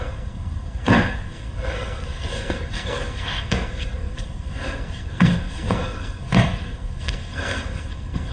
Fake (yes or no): yes